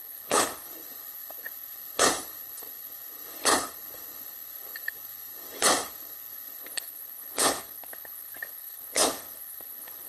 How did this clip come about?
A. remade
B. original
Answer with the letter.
A